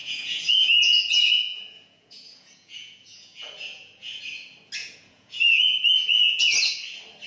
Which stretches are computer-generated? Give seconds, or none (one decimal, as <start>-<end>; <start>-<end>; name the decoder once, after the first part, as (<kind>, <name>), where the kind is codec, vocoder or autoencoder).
0.0-4.2 (vocoder, Vocos); 4.8-6.4